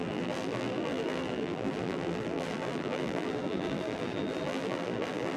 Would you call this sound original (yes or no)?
no